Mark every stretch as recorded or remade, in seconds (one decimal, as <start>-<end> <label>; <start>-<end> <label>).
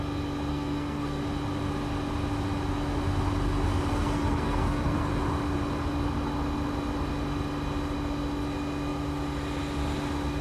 0.0-0.5 recorded; 0.5-1.2 remade; 1.2-3.9 recorded; 3.9-5.1 remade; 5.1-10.4 recorded